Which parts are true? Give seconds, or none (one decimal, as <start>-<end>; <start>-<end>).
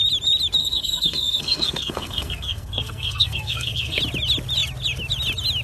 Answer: 0.0-0.6; 4.0-5.6